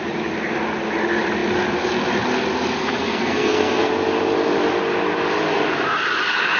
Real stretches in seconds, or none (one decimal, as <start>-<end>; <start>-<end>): 0.0-2.8; 3.9-6.6